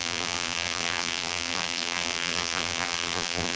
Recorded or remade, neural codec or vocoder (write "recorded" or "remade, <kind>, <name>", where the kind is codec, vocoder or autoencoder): remade, vocoder, BigVGAN v2